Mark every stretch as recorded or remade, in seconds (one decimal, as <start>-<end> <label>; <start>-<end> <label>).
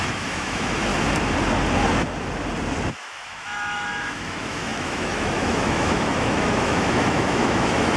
0.0-0.9 remade; 0.9-2.9 recorded; 2.9-8.0 remade